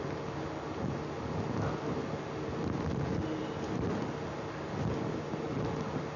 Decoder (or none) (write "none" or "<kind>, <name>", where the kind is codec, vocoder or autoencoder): none